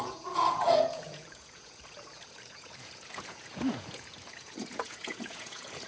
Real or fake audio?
fake